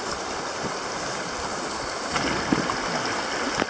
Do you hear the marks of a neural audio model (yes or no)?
no